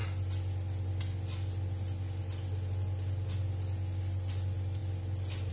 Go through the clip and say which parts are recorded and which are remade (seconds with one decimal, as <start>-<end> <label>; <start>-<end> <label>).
0.0-5.5 recorded